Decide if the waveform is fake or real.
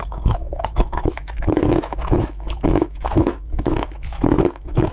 fake